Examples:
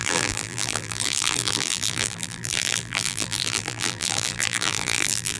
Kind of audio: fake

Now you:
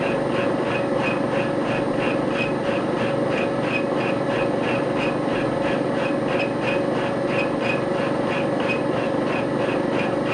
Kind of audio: real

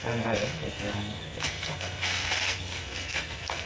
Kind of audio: fake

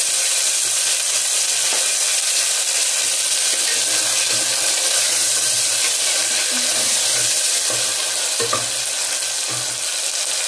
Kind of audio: real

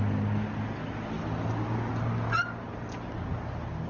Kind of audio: real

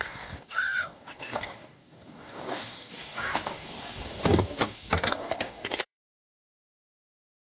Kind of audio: fake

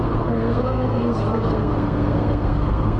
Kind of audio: fake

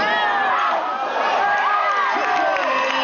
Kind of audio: real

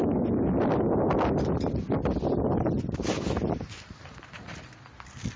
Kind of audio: real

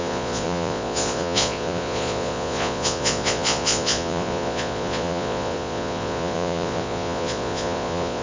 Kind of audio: fake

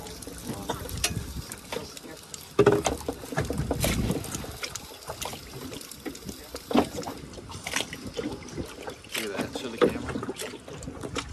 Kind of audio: real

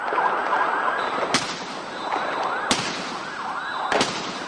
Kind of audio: real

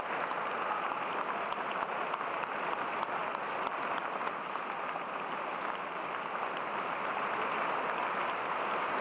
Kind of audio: real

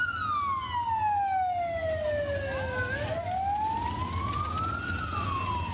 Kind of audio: real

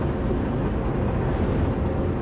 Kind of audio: real